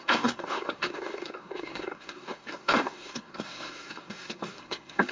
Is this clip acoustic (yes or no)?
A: no